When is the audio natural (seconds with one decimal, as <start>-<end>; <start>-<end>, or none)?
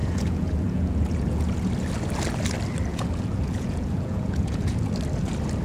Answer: 1.7-2.9; 4.9-5.6